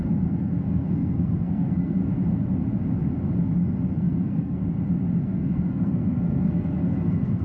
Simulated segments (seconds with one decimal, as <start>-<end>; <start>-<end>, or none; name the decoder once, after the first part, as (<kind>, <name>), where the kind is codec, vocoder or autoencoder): 0.0-2.0 (codec, SNAC); 3.9-4.6; 5.2-7.4